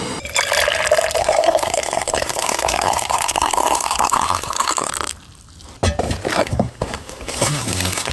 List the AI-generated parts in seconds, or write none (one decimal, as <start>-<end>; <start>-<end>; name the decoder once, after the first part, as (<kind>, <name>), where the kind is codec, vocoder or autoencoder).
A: 1.2-4.9 (codec, SNAC); 6.3-8.1